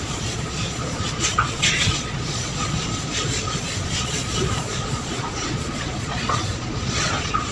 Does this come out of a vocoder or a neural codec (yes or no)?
yes